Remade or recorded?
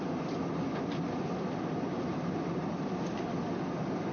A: remade